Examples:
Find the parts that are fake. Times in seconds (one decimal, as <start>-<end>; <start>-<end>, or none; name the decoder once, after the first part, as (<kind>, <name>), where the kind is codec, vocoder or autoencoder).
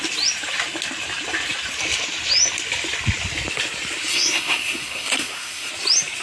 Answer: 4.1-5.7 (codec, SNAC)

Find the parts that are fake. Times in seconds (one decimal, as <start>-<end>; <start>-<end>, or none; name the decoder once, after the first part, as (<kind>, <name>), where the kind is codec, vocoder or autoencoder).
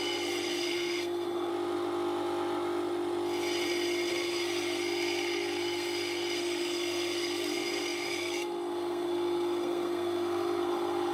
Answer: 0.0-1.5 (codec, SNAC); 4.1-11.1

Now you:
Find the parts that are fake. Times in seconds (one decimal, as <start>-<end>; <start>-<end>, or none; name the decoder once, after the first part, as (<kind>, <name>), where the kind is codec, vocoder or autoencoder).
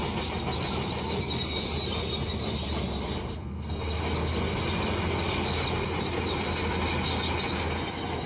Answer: 3.4-4.0 (codec, SNAC)